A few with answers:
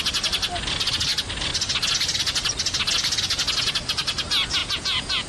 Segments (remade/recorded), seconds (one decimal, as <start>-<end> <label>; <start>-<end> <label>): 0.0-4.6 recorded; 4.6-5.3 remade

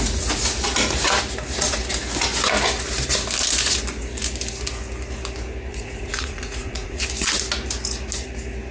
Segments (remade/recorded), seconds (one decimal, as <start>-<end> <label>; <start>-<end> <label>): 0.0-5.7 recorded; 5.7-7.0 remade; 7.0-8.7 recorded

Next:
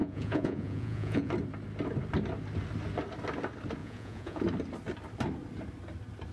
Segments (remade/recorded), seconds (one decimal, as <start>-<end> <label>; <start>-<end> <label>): 0.0-1.3 remade; 1.3-3.8 recorded; 3.8-4.4 remade; 4.4-6.3 recorded